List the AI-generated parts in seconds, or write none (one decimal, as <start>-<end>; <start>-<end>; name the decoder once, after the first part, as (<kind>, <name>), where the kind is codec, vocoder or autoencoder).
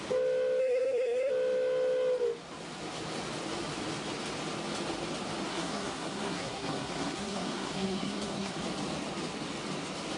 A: 0.6-1.3 (codec, SNAC); 5.5-8.6